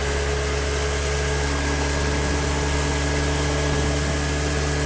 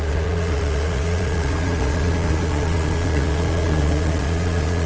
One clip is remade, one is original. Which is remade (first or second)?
second